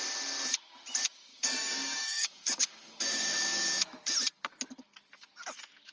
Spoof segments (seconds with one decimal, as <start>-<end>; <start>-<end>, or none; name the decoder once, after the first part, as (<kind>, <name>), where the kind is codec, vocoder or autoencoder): 1.3-3.8 (codec, DAC)